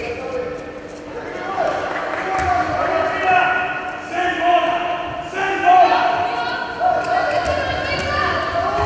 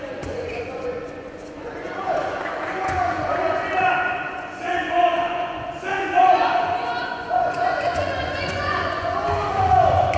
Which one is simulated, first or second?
second